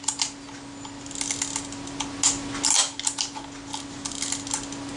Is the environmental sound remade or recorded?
recorded